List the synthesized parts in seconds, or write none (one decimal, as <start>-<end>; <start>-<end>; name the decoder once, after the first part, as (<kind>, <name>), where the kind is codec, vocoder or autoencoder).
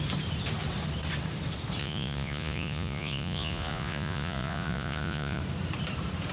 1.8-5.4 (vocoder, Vocos)